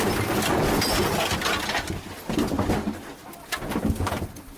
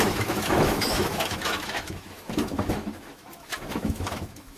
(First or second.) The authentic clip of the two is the first